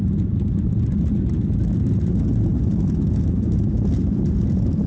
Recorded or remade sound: recorded